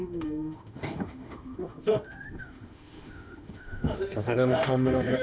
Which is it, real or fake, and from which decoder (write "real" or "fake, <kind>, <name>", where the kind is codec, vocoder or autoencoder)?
fake, autoencoder, DAC-VAE